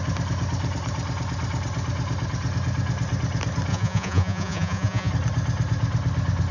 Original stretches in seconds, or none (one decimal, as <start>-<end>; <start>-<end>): 0.0-3.7; 5.1-6.5